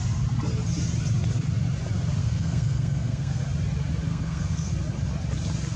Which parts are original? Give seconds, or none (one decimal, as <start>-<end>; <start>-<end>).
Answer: 0.0-2.2; 3.4-4.1; 4.7-5.8